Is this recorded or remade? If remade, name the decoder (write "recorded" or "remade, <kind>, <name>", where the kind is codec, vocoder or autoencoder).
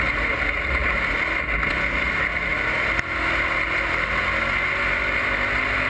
recorded